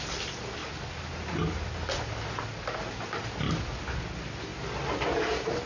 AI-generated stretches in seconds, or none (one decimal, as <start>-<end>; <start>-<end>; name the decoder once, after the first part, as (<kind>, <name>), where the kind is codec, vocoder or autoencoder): none